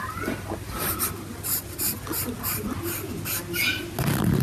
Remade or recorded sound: recorded